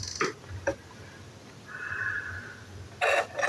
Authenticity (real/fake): real